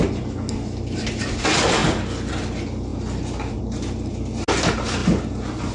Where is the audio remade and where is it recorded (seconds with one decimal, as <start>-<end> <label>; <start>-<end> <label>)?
0.0-5.7 recorded